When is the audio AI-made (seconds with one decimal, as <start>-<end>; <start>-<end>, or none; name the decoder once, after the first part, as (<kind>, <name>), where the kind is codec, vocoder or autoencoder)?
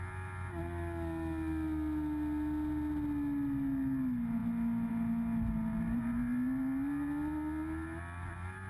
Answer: none